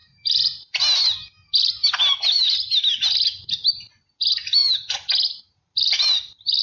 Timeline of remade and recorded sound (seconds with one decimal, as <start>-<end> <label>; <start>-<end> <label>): 0.0-6.6 recorded